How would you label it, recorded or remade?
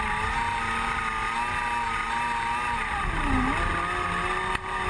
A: recorded